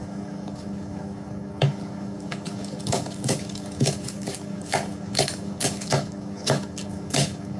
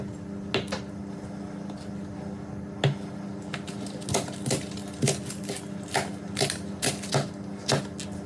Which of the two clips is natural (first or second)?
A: second